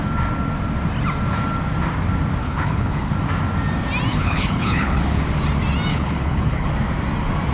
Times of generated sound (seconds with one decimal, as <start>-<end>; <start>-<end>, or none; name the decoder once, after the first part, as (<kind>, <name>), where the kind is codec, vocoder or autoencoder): 2.4-3.1 (codec, HILCodec); 4.1-5.0; 5.9-6.7